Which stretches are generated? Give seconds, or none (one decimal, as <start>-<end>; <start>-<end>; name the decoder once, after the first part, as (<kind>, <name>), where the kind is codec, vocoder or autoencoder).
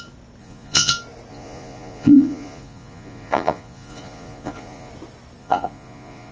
0.4-0.9 (vocoder, Vocos); 1.3-4.9; 5.4-6.3